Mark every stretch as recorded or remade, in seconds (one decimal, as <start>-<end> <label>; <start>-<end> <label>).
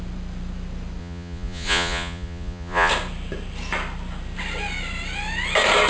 0.0-1.0 recorded; 1.0-2.9 remade; 2.9-5.9 recorded